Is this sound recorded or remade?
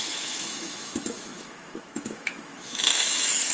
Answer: remade